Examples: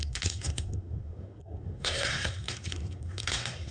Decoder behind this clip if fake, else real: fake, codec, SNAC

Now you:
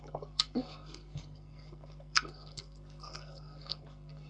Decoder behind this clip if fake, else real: fake, codec, SNAC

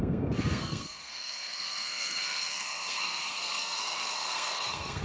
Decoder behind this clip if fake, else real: fake, codec, SNAC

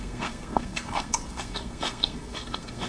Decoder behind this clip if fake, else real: fake, codec, SNAC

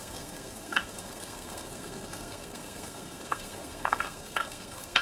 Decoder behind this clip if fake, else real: fake, codec, SNAC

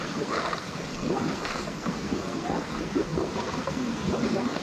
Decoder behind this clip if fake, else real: fake, codec, SNAC